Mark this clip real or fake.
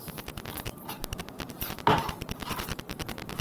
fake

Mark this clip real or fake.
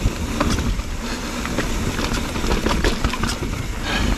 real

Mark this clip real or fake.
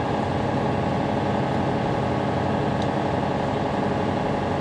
real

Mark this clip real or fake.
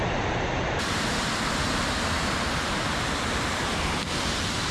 fake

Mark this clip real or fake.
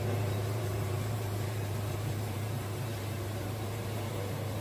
fake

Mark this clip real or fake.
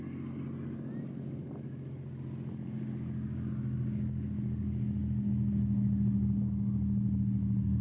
real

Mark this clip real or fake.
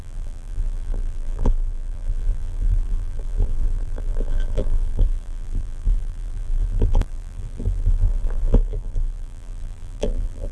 fake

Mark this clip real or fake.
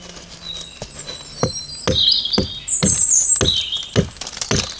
real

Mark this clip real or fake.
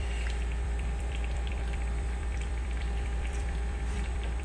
fake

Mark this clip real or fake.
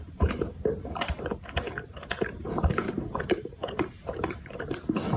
fake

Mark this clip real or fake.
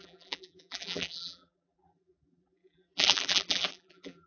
fake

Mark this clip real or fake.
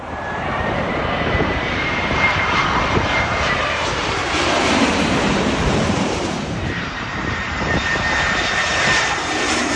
fake